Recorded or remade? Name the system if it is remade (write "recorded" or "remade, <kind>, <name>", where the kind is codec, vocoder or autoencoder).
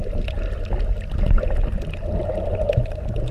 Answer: recorded